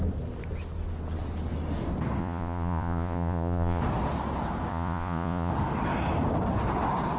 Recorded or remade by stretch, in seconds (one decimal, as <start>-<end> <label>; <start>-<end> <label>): 0.0-2.2 recorded; 2.2-3.8 remade; 3.8-4.7 recorded; 4.7-5.5 remade; 5.5-7.2 recorded